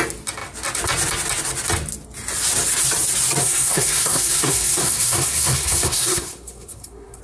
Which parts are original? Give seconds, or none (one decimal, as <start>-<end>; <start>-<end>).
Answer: 0.0-3.4